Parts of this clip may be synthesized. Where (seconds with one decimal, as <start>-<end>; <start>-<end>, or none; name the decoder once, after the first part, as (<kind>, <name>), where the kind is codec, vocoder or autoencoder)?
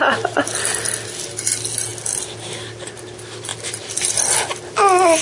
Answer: none